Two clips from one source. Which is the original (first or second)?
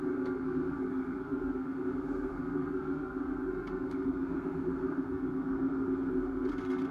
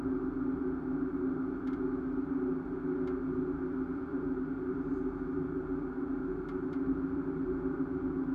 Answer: second